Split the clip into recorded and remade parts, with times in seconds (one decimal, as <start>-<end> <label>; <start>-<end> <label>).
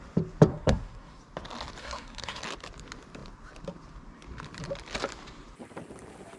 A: 0.0-0.5 recorded; 0.5-1.2 remade; 1.2-1.8 recorded; 1.8-2.4 remade; 2.4-6.4 recorded